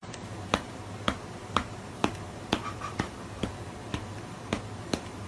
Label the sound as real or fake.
fake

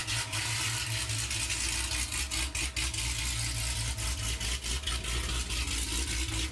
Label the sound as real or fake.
real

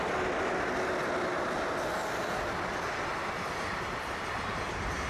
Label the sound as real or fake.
real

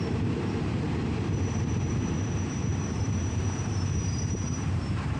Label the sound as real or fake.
fake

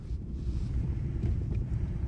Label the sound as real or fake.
fake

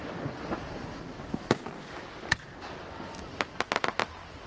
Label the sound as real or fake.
real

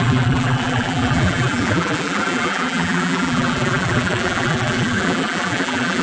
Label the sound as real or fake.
fake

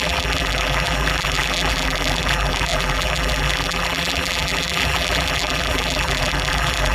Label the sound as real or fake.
fake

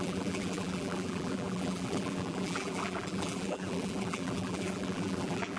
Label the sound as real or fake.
fake